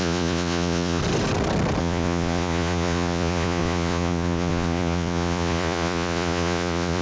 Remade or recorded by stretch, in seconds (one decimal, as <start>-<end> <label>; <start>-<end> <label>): 0.0-1.0 remade; 1.0-1.8 recorded; 1.8-7.0 remade